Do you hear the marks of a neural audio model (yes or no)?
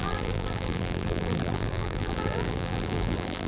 yes